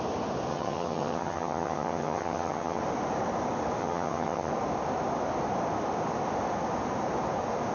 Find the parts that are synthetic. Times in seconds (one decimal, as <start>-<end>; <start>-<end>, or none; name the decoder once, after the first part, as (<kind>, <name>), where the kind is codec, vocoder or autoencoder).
0.5-2.8 (vocoder, HiFi-GAN); 3.8-4.5